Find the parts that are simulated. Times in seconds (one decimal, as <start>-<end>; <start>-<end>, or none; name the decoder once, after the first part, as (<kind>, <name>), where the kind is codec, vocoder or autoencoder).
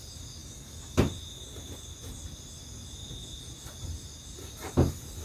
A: 0.4-1.0 (codec, DAC)